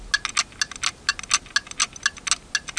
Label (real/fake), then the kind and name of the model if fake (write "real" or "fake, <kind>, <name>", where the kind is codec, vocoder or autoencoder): real